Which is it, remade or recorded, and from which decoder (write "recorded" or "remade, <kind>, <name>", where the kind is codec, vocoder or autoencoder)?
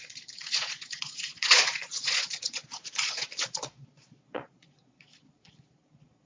remade, vocoder, Vocos